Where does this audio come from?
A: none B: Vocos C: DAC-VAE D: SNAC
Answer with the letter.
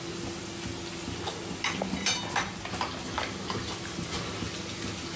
A